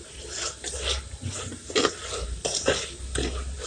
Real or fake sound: real